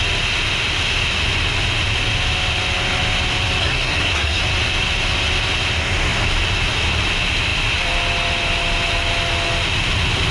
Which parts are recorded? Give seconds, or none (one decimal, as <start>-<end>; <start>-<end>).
0.0-3.6; 4.4-10.3